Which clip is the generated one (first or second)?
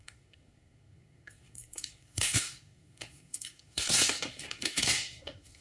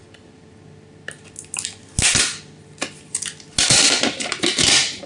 first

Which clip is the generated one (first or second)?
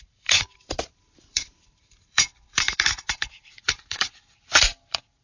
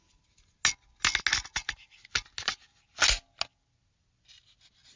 first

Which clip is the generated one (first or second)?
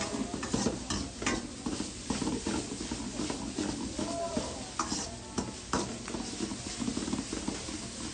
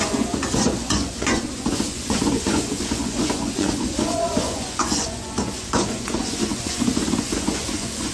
second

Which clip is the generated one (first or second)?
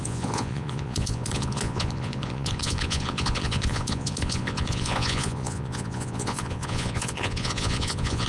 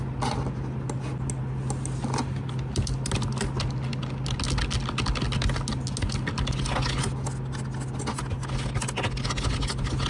first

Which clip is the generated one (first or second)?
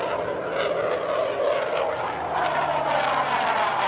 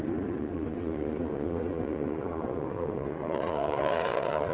second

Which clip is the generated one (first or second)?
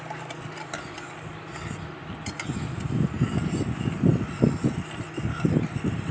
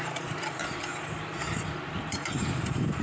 second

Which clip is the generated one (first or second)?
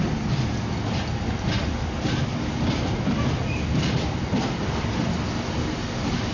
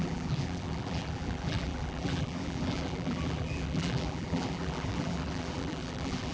second